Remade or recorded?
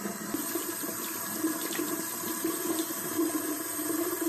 recorded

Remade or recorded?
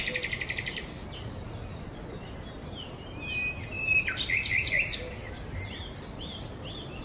recorded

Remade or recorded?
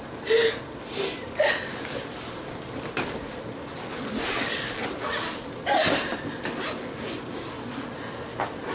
recorded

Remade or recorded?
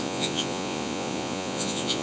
remade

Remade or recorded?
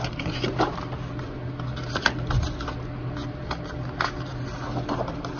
recorded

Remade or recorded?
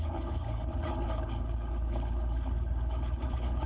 remade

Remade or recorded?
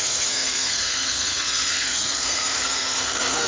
remade